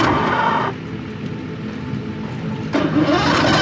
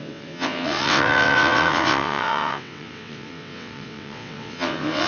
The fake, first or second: second